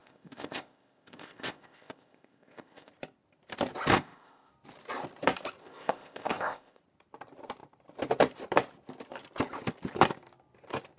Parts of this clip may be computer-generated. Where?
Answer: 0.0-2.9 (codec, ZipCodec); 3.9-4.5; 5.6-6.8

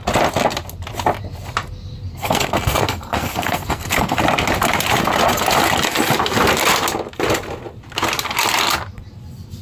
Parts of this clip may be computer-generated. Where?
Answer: 2.1-4.2 (codec, SNAC)